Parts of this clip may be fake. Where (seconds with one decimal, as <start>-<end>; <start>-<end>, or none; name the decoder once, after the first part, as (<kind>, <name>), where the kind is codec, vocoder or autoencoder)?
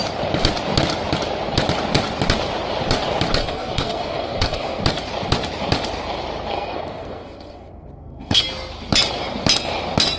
3.4-4.8 (codec, SNAC); 6.5-8.4